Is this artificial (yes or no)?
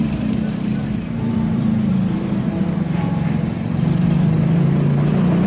yes